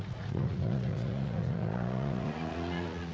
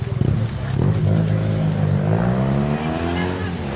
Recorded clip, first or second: second